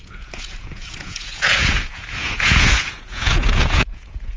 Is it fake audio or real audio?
fake